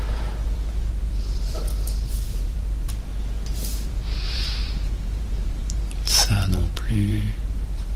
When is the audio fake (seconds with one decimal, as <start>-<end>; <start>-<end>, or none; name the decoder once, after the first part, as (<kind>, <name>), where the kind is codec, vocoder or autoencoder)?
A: 0.0-3.1 (vocoder, BigVGAN v2); 3.9-8.0